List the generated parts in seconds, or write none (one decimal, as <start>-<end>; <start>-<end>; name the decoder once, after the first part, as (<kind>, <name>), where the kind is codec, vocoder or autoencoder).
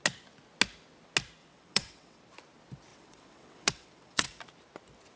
1.4-2.2 (vocoder, WaveNeXt); 2.9-4.4